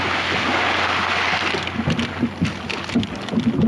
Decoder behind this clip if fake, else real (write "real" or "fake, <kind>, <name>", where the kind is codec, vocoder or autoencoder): real